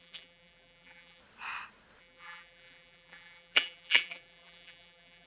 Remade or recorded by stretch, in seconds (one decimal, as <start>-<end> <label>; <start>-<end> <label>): 0.0-1.2 remade; 1.2-2.0 recorded; 2.0-5.3 remade